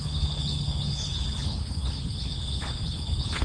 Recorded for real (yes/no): no